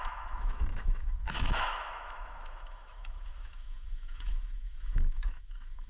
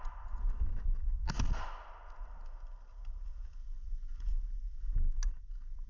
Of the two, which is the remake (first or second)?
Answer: first